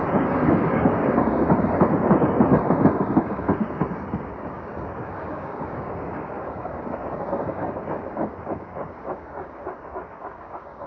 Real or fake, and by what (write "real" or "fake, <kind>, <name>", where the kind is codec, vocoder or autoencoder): fake, codec, DAC